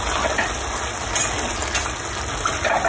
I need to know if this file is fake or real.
real